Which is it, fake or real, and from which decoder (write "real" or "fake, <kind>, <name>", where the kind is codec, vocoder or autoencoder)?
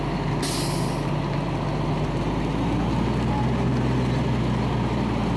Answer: real